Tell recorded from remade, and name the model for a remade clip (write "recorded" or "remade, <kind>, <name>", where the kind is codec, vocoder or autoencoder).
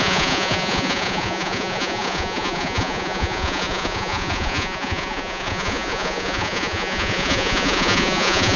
remade, vocoder, Vocos